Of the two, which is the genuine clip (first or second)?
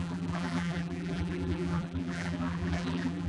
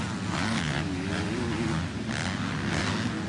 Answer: second